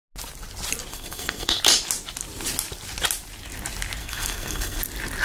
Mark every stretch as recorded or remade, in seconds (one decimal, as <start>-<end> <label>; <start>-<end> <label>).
0.0-0.9 recorded; 0.9-1.6 remade; 1.6-4.0 recorded; 4.0-4.8 remade; 4.8-5.2 recorded